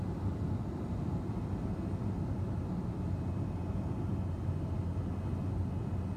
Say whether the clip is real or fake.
real